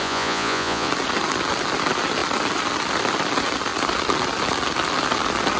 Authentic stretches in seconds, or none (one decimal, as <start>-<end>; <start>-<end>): 0.9-5.6

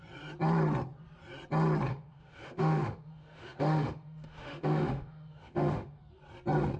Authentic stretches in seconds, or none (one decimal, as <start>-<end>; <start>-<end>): 0.0-1.9; 6.0-6.8

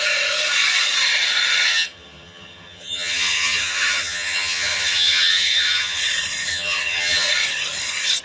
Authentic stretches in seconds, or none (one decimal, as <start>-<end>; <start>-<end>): 0.0-1.7; 6.0-6.5; 7.3-8.2

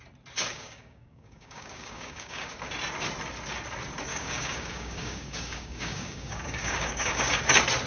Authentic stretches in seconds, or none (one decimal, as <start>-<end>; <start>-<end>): 0.0-0.5; 2.5-4.1; 7.4-7.9